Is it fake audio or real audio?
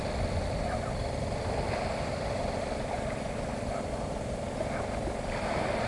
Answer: fake